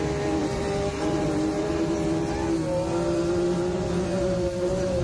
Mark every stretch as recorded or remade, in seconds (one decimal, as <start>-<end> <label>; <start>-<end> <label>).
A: 0.0-0.4 recorded; 0.4-1.9 remade; 1.9-5.0 recorded